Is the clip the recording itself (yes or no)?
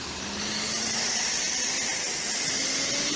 yes